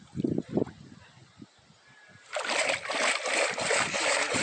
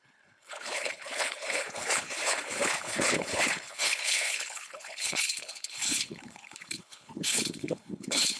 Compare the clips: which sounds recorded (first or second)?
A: first